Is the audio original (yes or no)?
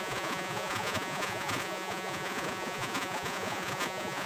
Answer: no